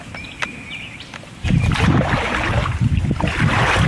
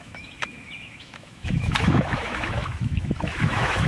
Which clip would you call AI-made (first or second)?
second